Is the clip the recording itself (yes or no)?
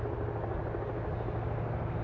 yes